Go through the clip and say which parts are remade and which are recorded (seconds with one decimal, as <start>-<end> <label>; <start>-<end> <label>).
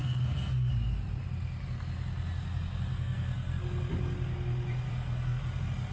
0.0-0.7 remade; 0.7-2.9 recorded; 2.9-3.6 remade; 3.6-4.9 recorded; 4.9-5.4 remade; 5.4-5.9 recorded